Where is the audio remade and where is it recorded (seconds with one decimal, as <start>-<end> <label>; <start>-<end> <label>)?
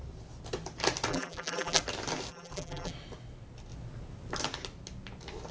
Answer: 0.0-1.1 recorded; 1.1-1.8 remade; 1.8-2.3 recorded; 2.3-2.9 remade; 2.9-5.5 recorded